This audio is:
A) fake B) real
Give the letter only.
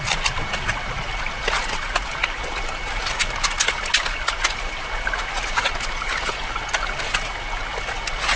B